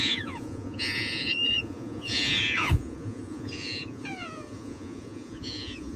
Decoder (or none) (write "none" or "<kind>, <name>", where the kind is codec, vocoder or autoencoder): vocoder, Vocos